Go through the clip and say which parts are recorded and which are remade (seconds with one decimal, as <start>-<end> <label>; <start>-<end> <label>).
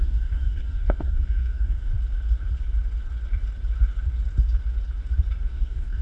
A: 0.0-1.9 remade; 1.9-5.5 recorded; 5.5-6.0 remade